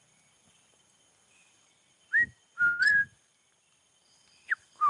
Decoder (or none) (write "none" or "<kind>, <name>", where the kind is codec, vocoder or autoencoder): none